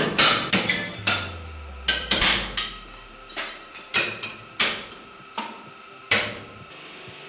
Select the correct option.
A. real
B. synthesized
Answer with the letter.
B